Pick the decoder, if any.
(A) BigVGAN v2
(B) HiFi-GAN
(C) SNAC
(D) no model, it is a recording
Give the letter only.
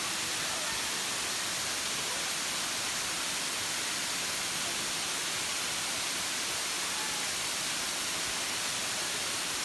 D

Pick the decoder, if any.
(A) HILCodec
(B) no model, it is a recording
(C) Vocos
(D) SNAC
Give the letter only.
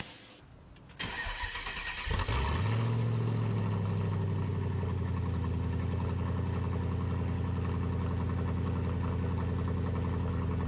B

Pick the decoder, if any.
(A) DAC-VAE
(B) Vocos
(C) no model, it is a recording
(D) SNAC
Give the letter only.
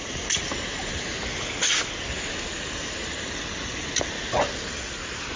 C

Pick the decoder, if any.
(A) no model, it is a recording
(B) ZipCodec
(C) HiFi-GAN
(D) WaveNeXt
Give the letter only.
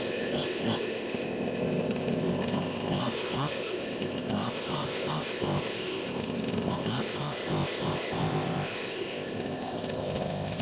B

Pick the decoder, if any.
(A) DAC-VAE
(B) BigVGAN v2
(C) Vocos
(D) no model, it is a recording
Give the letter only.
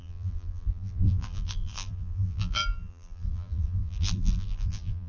B